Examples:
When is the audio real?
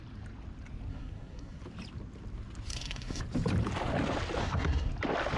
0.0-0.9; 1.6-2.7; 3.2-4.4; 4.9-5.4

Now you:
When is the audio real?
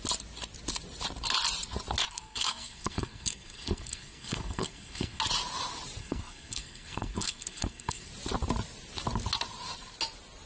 0.0-2.0; 5.2-6.0; 8.1-10.5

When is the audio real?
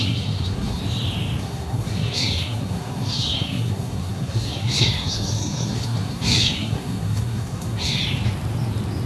0.8-1.4; 8.0-9.1